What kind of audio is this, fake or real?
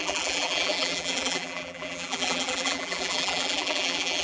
fake